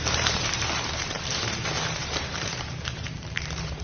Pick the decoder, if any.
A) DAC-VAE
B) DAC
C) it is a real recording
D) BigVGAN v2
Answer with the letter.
D